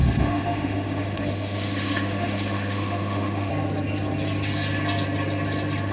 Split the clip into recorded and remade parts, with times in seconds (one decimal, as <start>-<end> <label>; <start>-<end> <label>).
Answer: 0.0-3.5 remade; 3.5-5.9 recorded